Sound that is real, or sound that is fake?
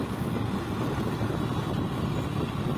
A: real